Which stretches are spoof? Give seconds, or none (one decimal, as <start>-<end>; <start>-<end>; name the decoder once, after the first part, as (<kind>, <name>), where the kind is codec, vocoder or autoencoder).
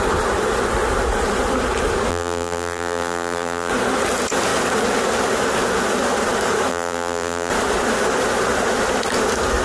2.1-3.7 (vocoder, BigVGAN v2); 6.7-7.5